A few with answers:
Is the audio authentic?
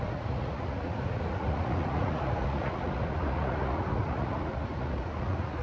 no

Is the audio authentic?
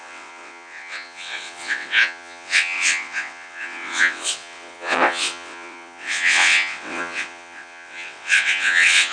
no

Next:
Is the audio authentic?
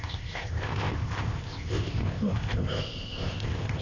no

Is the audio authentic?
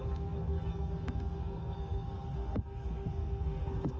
no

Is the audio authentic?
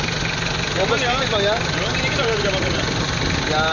yes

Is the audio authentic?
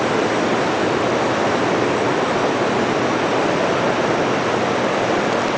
yes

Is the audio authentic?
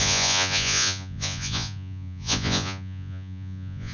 no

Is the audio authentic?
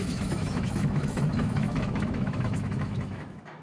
no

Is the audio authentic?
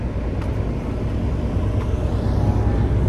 yes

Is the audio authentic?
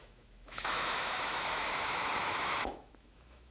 no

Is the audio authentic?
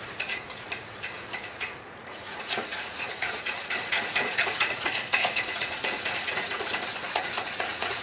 no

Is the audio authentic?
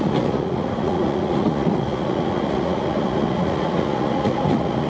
no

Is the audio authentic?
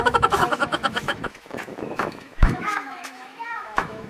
no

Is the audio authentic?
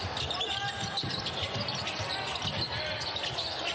yes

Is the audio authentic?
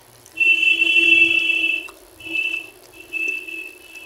yes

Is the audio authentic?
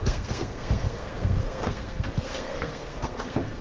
no